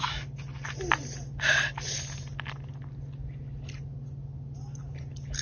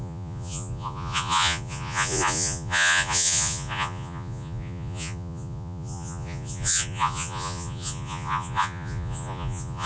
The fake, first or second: second